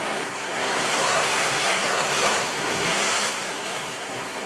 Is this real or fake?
fake